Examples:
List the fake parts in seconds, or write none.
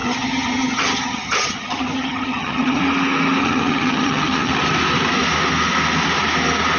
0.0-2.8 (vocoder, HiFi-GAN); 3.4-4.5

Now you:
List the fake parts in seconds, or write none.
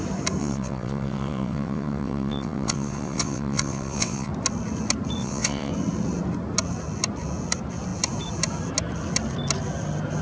0.4-4.3 (vocoder, WaveNeXt); 5.2-5.7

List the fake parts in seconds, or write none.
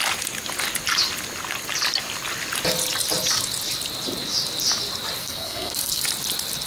5.2-6.0 (codec, SNAC)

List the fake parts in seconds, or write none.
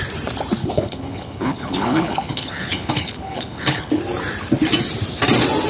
0.6-4.0 (codec, HILCodec)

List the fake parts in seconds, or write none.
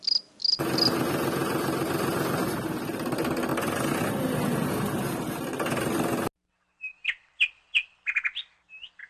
none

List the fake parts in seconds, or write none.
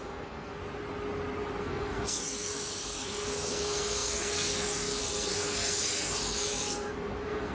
0.0-0.6 (codec, SNAC); 1.6-7.5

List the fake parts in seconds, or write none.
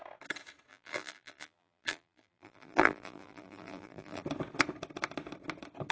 0.7-4.2 (vocoder, BigVGAN v2)